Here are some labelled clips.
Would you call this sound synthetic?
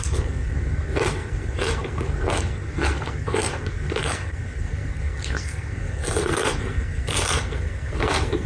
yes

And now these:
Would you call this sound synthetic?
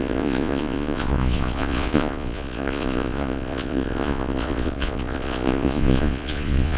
yes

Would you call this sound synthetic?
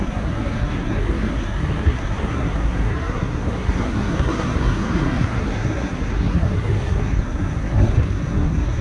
yes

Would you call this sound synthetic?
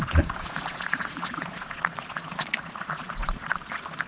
yes